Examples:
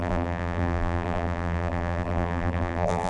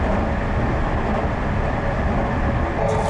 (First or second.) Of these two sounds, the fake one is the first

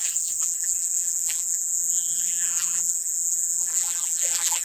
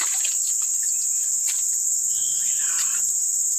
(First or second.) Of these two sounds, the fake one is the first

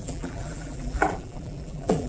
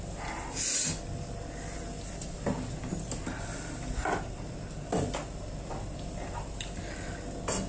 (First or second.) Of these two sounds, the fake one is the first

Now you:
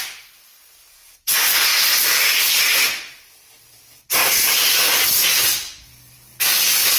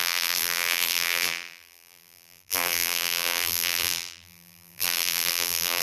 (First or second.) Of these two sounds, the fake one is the second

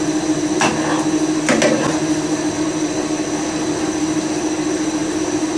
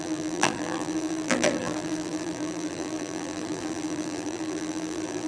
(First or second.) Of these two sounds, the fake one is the second